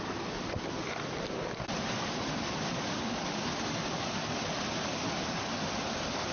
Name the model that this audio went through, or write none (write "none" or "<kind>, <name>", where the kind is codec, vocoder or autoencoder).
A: none